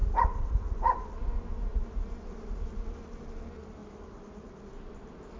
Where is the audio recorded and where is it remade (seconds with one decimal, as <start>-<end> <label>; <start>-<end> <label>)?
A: 0.0-5.4 recorded